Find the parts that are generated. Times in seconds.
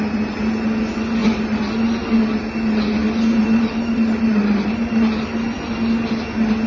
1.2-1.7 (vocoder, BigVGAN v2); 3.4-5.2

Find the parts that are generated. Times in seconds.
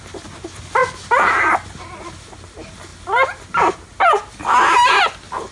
none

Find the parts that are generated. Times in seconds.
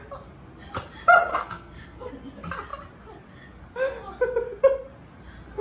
1.3-2.1 (codec, SNAC)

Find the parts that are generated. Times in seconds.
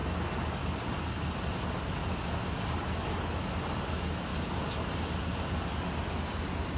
none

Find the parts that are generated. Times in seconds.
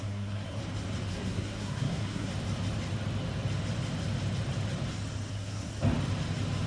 0.0-0.6 (codec, SNAC); 1.1-2.3; 5.3-5.7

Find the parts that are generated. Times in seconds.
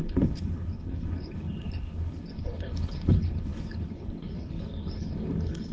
0.0-5.7 (codec, HILCodec)